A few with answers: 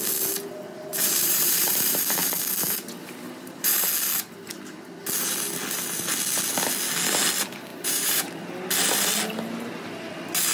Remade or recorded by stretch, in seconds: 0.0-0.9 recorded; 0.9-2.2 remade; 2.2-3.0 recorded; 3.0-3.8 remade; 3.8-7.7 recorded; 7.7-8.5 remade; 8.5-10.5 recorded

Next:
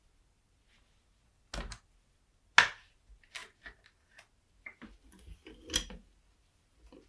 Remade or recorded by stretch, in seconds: 0.0-7.1 recorded